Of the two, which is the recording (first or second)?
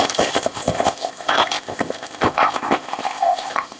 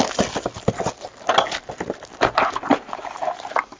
second